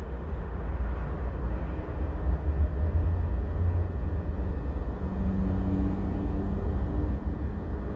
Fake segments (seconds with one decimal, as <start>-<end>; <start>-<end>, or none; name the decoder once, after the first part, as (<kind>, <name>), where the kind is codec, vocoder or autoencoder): 0.0-0.7 (autoencoder, DAC-VAE)